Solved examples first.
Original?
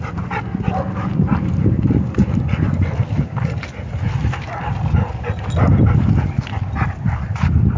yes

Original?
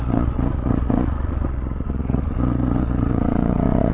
no